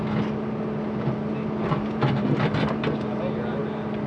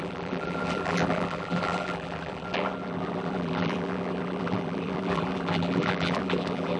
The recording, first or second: first